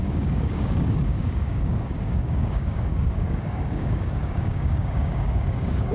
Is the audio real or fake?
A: fake